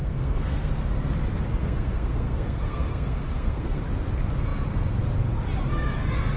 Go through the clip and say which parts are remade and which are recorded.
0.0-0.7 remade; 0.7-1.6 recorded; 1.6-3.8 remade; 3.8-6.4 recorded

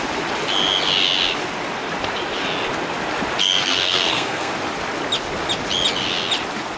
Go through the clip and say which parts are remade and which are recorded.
0.0-3.4 recorded; 3.4-4.5 remade; 4.5-6.8 recorded

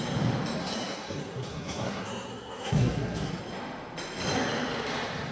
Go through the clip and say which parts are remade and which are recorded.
0.0-0.6 recorded; 0.6-3.4 remade; 3.4-5.3 recorded

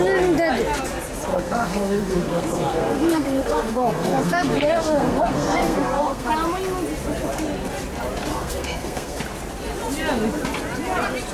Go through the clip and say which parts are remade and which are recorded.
0.0-1.3 recorded; 1.3-6.3 remade; 6.3-8.3 recorded; 8.3-9.2 remade; 9.2-11.3 recorded